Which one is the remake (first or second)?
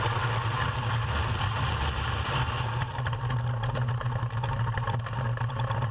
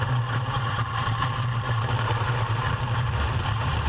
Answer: second